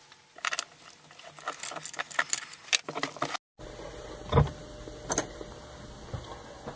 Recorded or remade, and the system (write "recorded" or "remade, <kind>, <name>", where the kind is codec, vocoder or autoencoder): recorded